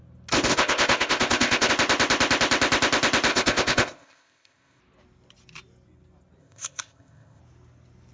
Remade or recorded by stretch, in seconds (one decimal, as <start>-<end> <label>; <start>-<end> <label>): 0.0-0.5 recorded; 0.5-1.7 remade; 1.7-3.3 recorded; 3.3-4.8 remade; 4.8-6.4 recorded; 6.4-7.4 remade; 7.4-8.1 recorded